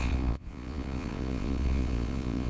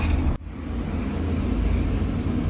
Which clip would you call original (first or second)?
second